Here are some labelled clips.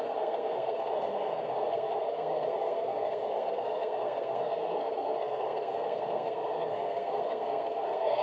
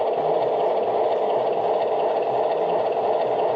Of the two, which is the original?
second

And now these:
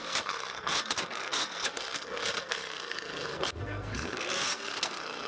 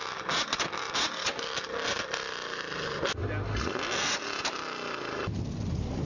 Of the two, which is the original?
second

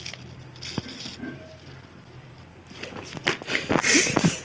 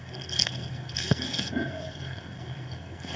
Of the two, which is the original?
first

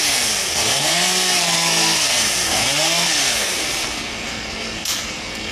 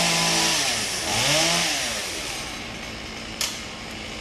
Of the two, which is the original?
second